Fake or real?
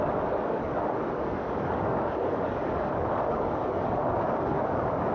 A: fake